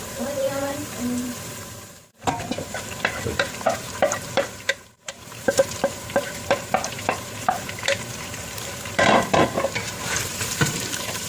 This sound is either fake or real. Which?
fake